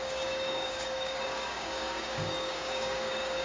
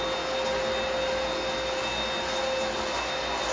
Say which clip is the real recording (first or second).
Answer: second